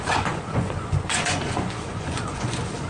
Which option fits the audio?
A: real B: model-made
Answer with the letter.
B